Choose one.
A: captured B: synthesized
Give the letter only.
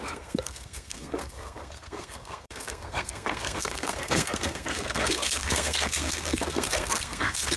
B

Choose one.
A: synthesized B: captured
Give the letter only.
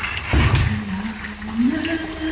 B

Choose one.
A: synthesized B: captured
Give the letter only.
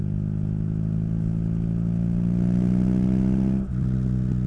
B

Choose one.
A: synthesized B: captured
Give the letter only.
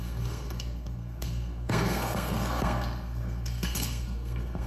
A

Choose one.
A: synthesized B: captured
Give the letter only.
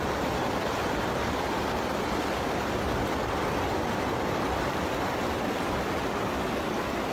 B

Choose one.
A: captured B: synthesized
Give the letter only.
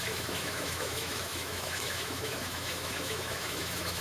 B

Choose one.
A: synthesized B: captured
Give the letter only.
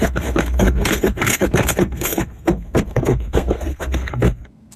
A